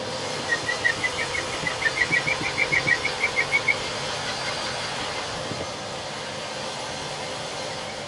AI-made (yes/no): no